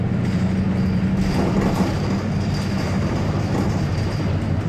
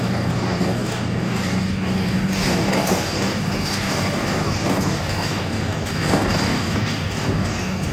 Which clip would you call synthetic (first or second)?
second